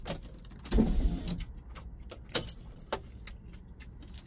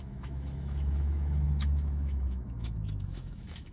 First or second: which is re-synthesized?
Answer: second